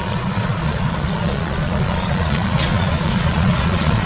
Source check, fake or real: fake